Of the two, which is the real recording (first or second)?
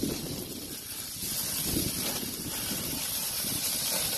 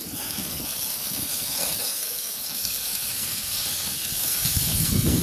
first